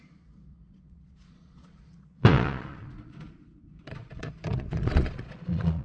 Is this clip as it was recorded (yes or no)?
no